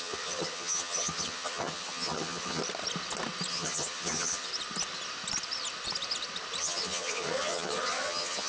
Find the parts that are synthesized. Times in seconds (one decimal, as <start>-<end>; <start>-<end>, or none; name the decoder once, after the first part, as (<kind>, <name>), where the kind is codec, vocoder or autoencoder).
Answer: 0.0-2.6 (vocoder, HiFi-GAN); 3.5-4.5; 6.6-8.5